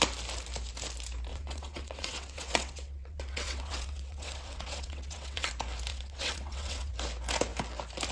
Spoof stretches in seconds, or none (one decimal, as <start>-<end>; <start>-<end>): 1.3-5.5; 5.9-6.9